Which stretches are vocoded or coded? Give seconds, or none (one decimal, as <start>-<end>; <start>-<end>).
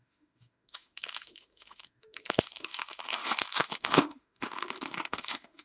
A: 0.0-5.6